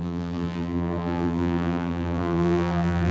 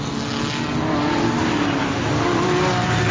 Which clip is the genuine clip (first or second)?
second